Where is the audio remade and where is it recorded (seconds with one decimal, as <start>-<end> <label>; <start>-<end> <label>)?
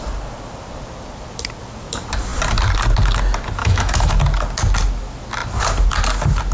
0.0-3.6 recorded; 3.6-4.1 remade; 4.1-6.5 recorded